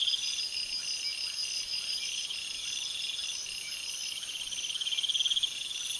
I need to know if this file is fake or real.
real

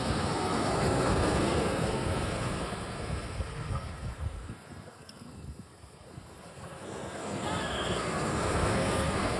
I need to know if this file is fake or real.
fake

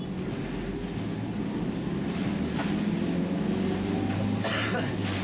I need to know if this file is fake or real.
real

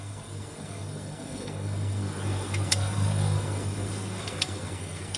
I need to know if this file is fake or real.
fake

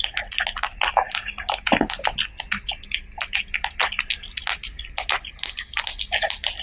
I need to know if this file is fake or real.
real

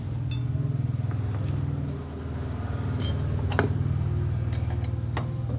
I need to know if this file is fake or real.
real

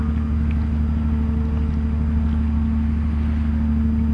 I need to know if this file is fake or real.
real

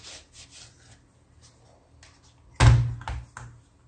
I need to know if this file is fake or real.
real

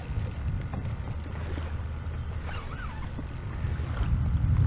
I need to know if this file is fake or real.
real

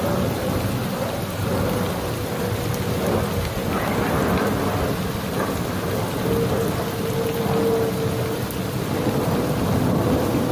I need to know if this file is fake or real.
real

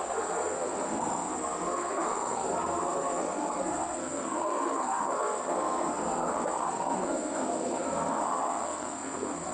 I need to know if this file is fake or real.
fake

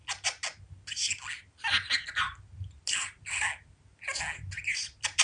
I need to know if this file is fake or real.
real